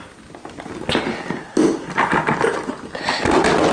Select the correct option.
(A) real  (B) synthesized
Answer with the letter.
A